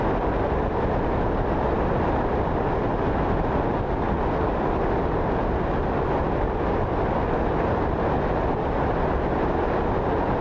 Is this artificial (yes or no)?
no